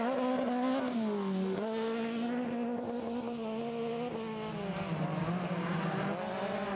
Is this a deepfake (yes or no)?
no